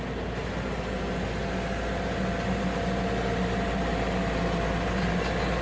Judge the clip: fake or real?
real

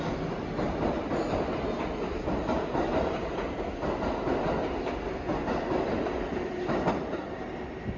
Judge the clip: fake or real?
real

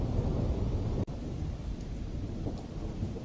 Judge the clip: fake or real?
real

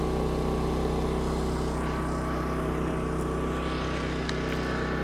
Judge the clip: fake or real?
real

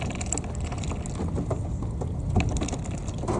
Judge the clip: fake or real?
real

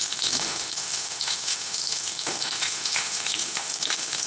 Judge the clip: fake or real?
fake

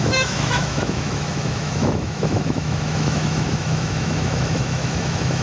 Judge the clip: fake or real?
fake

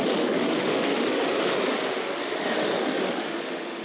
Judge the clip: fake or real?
fake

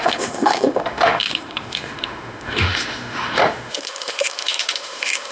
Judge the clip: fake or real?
fake